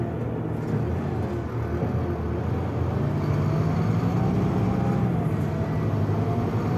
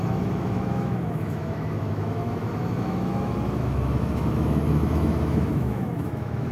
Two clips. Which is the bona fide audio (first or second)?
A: first